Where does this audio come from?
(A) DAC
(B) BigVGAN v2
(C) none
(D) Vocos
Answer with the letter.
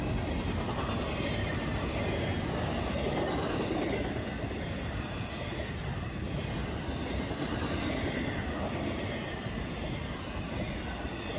C